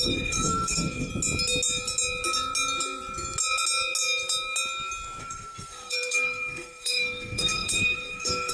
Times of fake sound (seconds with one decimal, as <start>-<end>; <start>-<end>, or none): 0.0-1.1; 5.2-8.5